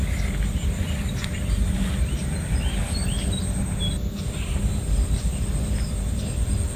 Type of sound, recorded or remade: recorded